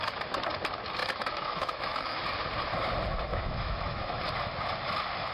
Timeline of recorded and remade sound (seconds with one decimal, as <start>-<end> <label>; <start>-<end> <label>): 0.0-1.0 recorded; 1.0-2.2 remade; 2.2-3.3 recorded; 3.3-4.2 remade; 4.2-5.3 recorded